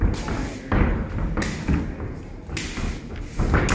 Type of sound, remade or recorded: recorded